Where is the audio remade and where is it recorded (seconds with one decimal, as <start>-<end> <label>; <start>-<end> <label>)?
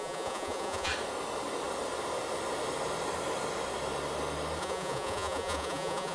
0.0-0.9 remade; 0.9-4.6 recorded; 4.6-6.1 remade